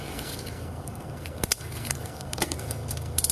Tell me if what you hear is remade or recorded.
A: remade